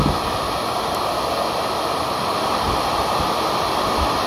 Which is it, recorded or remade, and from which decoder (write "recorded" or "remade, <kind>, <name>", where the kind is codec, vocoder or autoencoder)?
recorded